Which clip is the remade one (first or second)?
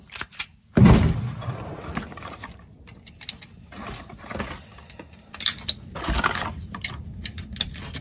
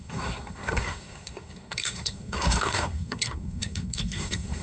second